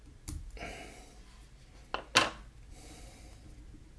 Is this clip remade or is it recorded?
recorded